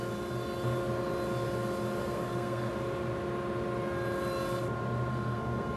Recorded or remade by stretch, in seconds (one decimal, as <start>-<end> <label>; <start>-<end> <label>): 0.0-2.0 recorded; 2.0-2.7 remade; 2.7-5.1 recorded; 5.1-5.8 remade